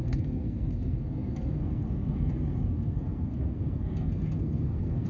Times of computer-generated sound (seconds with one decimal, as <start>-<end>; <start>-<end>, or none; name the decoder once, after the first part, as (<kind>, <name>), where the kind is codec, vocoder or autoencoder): 0.0-5.1 (codec, SNAC)

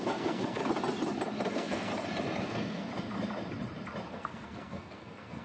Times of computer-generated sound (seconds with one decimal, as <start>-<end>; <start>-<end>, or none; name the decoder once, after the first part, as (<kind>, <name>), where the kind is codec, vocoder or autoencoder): 0.0-0.6 (codec, SNAC); 1.5-1.9; 2.4-2.9; 4.1-5.4